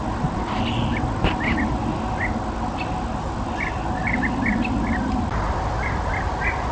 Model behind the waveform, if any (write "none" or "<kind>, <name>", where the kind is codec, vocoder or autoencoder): none